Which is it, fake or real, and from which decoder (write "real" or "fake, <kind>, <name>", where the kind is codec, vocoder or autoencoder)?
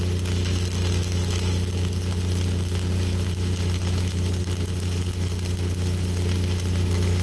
real